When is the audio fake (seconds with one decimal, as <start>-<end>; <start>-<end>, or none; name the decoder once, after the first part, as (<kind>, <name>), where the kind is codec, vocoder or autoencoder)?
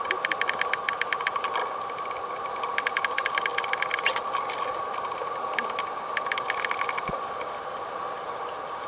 none